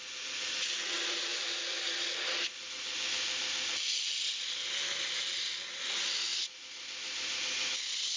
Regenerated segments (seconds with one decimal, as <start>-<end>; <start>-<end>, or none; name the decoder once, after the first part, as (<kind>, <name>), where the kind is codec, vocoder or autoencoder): none